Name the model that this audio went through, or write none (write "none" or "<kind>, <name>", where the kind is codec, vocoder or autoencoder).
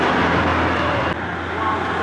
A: none